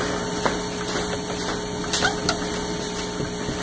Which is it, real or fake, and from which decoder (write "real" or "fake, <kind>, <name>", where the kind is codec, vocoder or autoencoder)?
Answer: real